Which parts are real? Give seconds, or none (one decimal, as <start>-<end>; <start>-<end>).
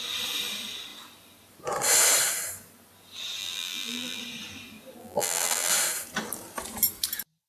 0.0-3.4; 4.2-5.0; 5.7-7.5